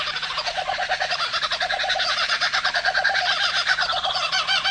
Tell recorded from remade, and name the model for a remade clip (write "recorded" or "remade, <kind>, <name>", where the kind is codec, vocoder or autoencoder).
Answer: remade, vocoder, Vocos